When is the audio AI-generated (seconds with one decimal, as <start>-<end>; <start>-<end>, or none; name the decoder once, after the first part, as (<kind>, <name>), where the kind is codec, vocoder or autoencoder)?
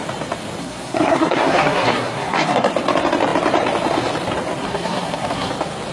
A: 0.6-2.7 (codec, SNAC); 4.6-5.5